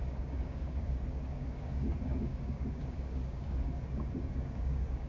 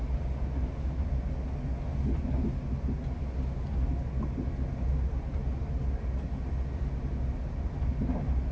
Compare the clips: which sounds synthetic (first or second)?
first